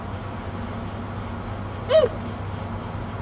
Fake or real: real